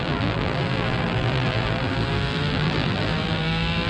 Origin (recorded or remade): remade